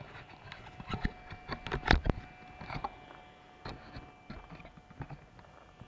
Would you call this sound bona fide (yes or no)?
yes